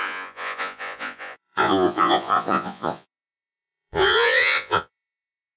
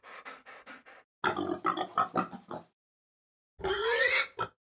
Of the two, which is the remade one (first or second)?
first